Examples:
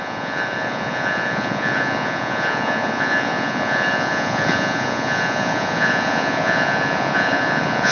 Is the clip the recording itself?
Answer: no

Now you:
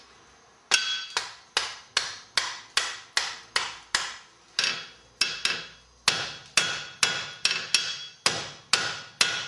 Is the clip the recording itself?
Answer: yes